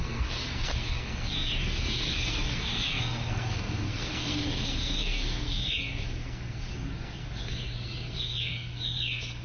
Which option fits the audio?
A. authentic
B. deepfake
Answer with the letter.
B